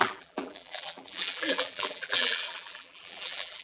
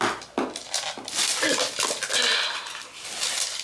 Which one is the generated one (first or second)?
first